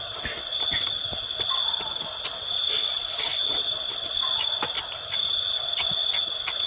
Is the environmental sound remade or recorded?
recorded